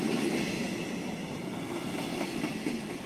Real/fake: real